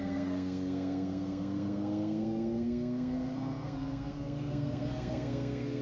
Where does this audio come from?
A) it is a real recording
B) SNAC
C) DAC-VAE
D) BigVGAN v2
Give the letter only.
B